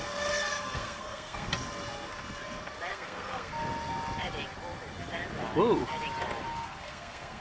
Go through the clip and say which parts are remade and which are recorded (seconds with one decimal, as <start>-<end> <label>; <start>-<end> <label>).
0.0-0.5 recorded; 0.5-1.5 remade; 1.5-2.9 recorded; 2.9-3.5 remade; 3.5-6.5 recorded; 6.5-7.4 remade